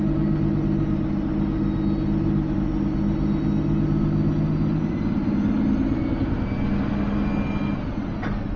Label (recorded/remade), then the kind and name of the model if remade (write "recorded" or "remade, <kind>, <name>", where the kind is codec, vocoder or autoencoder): recorded